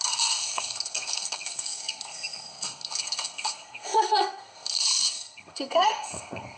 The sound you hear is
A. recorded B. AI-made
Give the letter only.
B